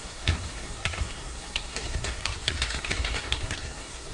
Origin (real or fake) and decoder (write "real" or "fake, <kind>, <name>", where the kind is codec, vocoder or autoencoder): fake, codec, SNAC